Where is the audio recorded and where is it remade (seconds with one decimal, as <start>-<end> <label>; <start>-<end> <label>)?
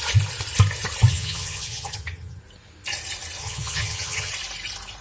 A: 0.0-1.1 recorded; 1.1-2.4 remade; 2.4-3.4 recorded; 3.4-4.3 remade; 4.3-5.0 recorded